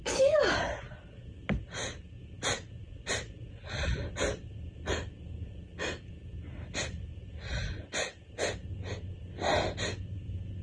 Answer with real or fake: real